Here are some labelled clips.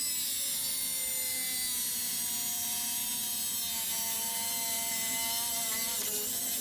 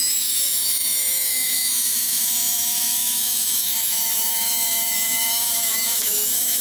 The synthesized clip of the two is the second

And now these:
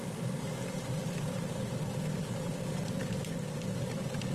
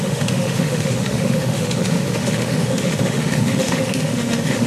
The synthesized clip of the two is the second